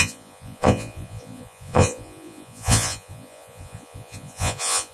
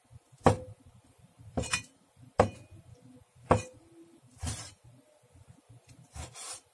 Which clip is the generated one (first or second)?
first